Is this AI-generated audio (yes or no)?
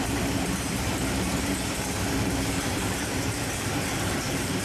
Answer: yes